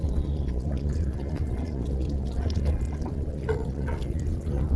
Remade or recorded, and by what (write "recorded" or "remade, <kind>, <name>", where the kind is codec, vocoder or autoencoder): remade, vocoder, Vocos